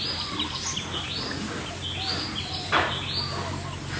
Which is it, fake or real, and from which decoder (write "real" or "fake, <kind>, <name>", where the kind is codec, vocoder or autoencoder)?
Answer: real